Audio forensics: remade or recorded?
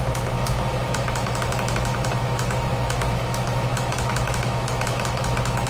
remade